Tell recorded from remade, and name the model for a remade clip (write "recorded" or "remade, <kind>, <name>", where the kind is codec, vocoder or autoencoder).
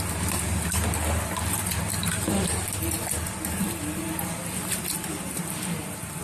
recorded